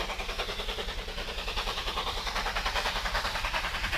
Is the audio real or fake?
fake